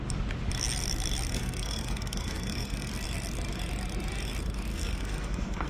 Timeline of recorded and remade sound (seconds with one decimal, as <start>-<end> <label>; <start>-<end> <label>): 0.0-1.3 recorded; 1.3-2.9 remade; 2.9-4.7 recorded; 4.7-5.7 remade